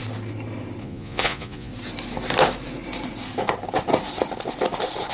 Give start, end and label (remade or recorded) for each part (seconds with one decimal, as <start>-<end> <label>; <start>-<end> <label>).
0.0-0.8 recorded; 0.8-1.7 remade; 1.7-5.1 recorded